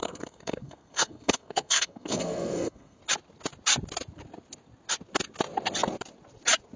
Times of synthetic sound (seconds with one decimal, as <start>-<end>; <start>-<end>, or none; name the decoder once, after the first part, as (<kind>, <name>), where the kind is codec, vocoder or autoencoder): 0.0-3.0 (codec, SNAC)